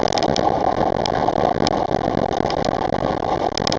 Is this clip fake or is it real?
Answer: real